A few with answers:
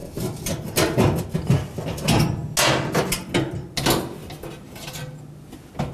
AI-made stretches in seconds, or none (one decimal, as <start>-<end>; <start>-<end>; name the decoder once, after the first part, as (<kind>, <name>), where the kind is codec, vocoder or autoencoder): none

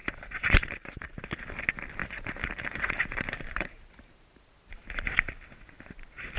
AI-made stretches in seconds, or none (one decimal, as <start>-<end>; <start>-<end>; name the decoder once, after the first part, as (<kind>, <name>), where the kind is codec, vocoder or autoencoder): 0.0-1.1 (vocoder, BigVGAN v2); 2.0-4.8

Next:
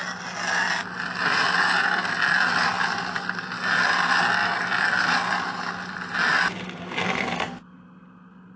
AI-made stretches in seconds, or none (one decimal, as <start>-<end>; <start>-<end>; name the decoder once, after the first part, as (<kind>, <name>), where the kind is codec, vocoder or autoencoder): none